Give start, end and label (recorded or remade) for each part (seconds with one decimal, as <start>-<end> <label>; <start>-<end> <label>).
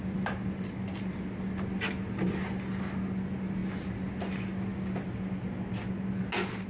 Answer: 0.0-6.7 recorded